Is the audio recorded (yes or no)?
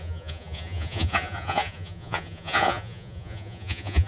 no